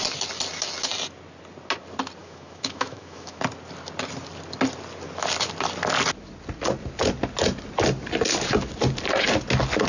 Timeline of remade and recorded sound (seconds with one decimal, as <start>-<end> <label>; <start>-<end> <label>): 0.0-2.2 recorded; 2.2-3.4 remade; 3.4-9.9 recorded